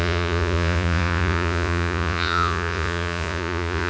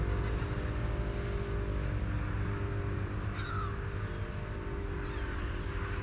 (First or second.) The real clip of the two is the second